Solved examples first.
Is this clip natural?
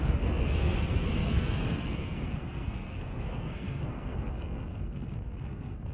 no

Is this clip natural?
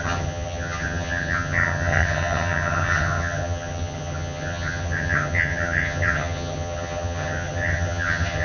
no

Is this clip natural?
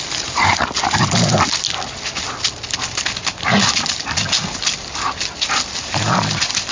yes